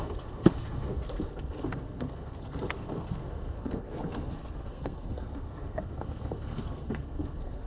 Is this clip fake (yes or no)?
yes